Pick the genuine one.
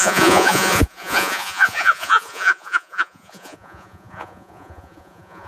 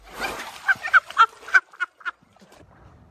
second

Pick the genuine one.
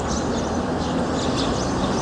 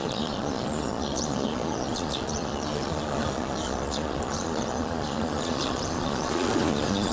first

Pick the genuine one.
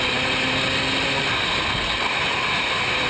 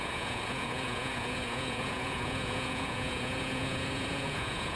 first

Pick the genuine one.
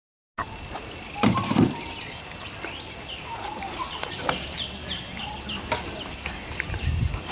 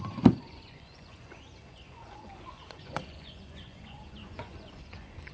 first